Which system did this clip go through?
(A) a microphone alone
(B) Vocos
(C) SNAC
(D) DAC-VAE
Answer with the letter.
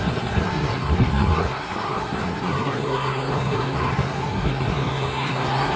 C